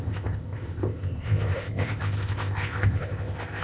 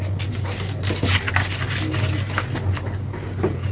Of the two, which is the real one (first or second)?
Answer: second